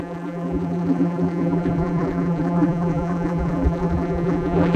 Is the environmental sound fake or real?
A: fake